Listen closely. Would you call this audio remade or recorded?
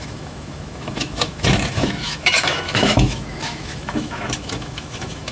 remade